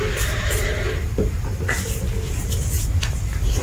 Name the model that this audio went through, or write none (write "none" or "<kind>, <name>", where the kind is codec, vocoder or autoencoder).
none